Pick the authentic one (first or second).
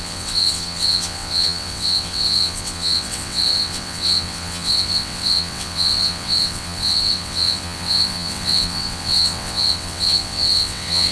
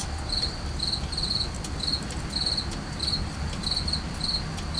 second